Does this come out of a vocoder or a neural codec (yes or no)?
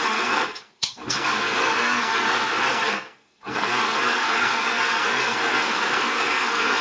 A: yes